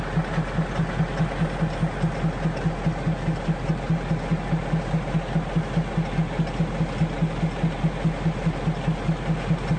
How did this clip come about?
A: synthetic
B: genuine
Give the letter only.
B